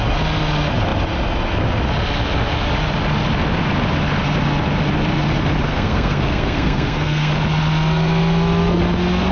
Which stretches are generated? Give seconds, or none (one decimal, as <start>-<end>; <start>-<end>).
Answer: 5.7-7.3